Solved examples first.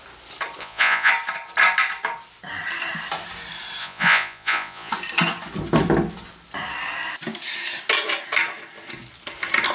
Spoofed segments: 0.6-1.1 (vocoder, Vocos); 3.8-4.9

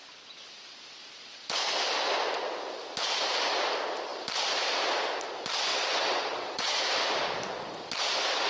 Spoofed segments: 5.7-6.8 (vocoder, WaveNeXt)